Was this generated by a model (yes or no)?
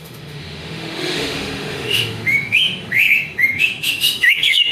yes